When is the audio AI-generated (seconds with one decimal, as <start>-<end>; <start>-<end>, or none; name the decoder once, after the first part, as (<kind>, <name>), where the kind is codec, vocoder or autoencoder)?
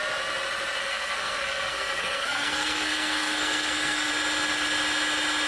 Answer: 0.8-4.1 (codec, SNAC)